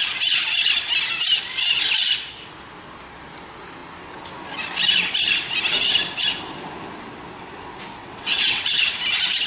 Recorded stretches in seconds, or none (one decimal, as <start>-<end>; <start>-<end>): 0.0-8.0; 8.9-9.5